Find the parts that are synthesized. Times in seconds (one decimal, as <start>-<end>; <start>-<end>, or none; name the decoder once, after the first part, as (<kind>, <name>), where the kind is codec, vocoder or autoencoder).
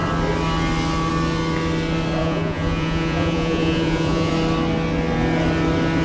2.2-4.3 (vocoder, Vocos)